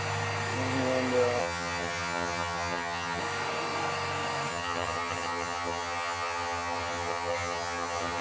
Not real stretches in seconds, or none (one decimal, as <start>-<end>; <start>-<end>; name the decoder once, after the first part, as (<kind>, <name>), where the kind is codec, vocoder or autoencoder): 1.4-3.2 (vocoder, HiFi-GAN); 4.5-8.2